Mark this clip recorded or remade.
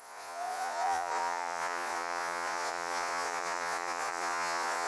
remade